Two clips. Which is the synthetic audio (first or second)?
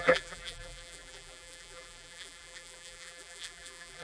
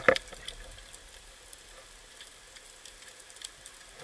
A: first